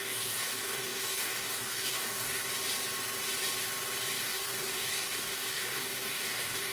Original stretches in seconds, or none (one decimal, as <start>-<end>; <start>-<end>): 2.4-4.2

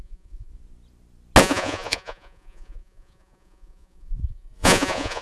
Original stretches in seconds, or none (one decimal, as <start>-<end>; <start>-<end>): 0.5-1.4

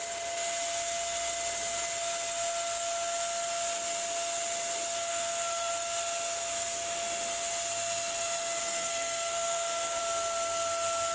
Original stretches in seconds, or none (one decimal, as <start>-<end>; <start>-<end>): 0.0-5.1; 5.7-8.6; 10.0-11.1

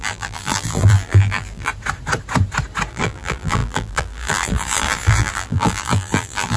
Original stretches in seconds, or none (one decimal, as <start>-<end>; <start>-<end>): 1.7-2.9

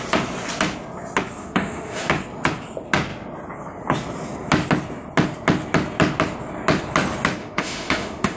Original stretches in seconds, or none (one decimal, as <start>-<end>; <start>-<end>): 0.0-1.4; 2.1-7.4

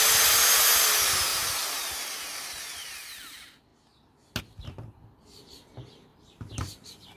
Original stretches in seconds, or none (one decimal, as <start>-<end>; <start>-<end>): 0.0-1.3; 3.2-6.1

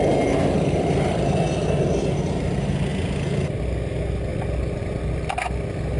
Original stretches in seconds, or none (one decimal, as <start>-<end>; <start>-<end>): 0.0-6.0

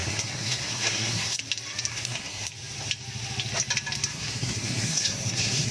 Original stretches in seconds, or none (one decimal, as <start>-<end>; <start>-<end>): 1.4-1.9; 2.5-4.1